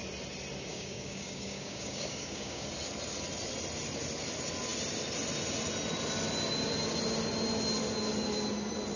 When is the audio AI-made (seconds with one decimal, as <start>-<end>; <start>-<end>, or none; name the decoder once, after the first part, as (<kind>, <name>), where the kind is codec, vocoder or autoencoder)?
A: 0.7-2.7 (codec, DAC)